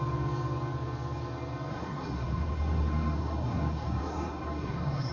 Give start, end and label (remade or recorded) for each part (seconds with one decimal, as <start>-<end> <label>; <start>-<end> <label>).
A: 0.0-1.7 recorded; 1.7-5.1 remade